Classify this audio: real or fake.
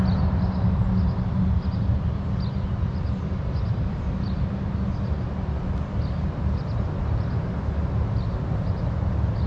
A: real